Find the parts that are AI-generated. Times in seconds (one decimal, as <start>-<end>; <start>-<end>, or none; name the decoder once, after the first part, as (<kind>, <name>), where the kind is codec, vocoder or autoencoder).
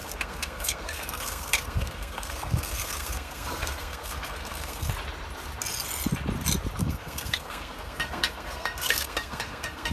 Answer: 0.0-4.9 (codec, SNAC); 6.8-9.9